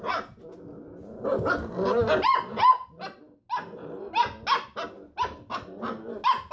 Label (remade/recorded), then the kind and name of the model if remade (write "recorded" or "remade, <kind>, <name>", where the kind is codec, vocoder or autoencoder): recorded